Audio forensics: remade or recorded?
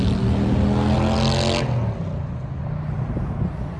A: recorded